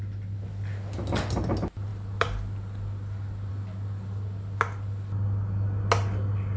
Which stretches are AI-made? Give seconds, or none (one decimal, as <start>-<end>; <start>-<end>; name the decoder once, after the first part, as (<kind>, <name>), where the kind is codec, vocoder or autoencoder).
none